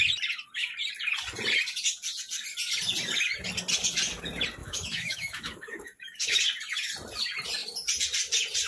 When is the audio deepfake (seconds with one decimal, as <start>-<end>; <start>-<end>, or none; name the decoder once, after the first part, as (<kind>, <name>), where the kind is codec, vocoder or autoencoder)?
4.6-6.4 (autoencoder, DAC-VAE)